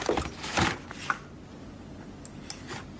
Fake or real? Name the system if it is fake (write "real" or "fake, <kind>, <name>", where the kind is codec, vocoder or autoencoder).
real